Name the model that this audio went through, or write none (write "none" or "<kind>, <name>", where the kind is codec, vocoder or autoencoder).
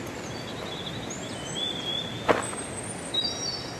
none